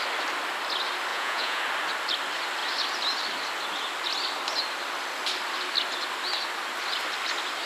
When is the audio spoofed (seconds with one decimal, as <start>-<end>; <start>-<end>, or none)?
1.1-1.6